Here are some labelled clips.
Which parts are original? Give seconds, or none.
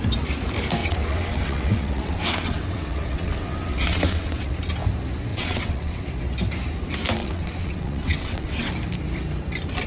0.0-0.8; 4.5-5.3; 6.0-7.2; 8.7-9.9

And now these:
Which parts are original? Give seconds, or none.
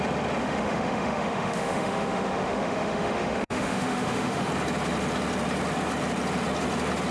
0.0-0.4; 4.5-7.1